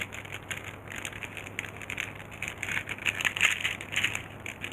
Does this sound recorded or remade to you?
recorded